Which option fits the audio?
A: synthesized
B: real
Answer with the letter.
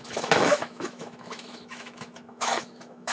A